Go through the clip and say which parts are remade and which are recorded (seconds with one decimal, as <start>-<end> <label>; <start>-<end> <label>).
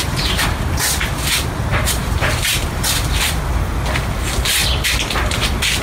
0.0-1.7 recorded; 1.7-3.3 remade; 3.3-4.6 recorded; 4.6-5.8 remade